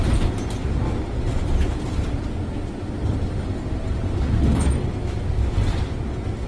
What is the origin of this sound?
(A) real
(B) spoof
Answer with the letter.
A